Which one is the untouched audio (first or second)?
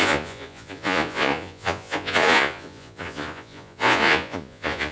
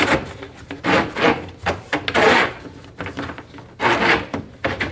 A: second